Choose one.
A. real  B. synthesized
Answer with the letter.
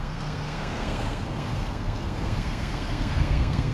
B